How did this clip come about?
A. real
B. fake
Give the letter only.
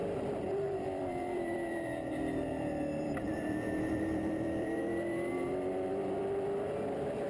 B